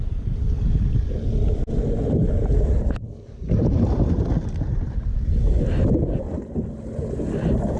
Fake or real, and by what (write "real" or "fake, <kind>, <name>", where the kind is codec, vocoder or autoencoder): real